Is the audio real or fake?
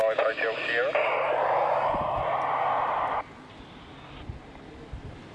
real